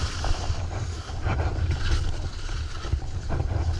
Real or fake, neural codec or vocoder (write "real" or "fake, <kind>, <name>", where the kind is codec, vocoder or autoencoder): real